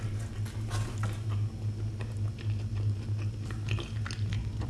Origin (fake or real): real